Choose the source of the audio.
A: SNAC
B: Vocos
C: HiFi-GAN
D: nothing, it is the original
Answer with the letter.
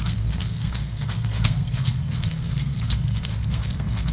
A